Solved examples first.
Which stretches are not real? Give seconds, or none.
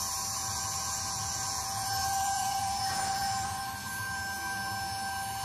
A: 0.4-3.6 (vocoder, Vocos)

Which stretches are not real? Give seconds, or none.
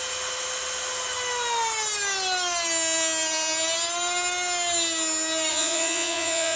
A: 5.5-6.6 (vocoder, Vocos)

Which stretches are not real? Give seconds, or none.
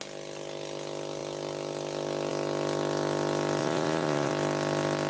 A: 3.6-4.3 (vocoder, Vocos)